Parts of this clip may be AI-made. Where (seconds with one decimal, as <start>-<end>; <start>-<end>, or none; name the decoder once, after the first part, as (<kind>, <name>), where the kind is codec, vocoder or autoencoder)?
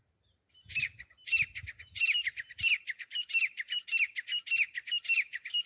0.0-5.7 (vocoder, BigVGAN v2)